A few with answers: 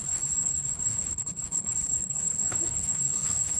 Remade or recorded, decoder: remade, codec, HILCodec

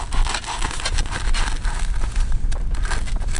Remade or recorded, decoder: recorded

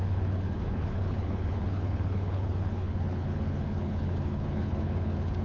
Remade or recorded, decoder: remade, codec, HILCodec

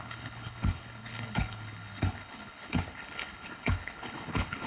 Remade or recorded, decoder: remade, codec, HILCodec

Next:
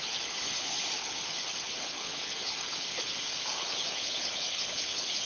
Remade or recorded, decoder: remade, codec, HILCodec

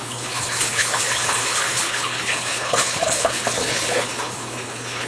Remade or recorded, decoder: remade, codec, HILCodec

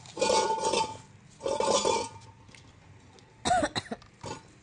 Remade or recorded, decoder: recorded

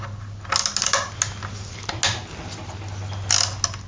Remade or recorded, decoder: recorded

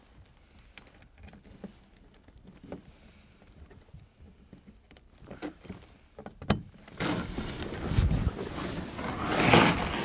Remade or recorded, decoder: recorded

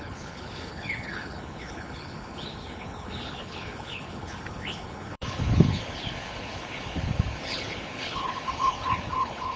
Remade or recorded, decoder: remade, codec, HILCodec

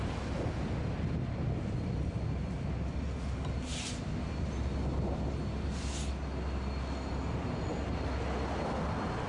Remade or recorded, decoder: recorded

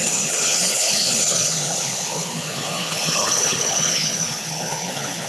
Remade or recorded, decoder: remade, codec, HILCodec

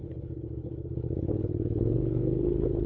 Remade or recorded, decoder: remade, codec, HILCodec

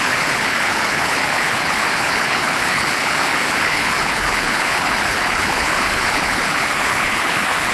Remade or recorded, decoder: remade, codec, HILCodec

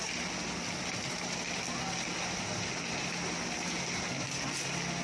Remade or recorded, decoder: recorded